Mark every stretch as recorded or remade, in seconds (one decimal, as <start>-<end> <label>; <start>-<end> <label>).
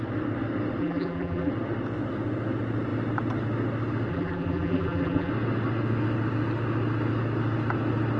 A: 0.0-0.8 recorded; 0.8-1.5 remade; 1.5-4.1 recorded; 4.1-5.3 remade; 5.3-8.2 recorded